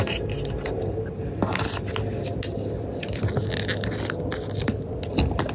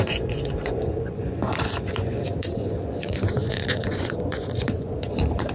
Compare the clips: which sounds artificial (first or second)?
second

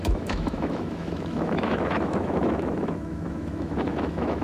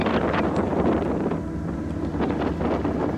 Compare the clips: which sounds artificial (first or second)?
first